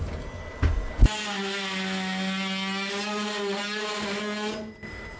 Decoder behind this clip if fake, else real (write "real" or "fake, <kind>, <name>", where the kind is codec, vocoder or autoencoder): real